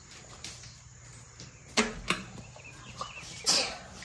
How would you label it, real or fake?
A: fake